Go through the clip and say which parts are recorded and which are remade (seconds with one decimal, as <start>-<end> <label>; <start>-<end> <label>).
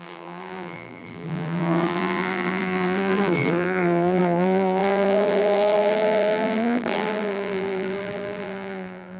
0.0-9.2 remade